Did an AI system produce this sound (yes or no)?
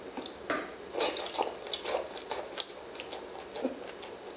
no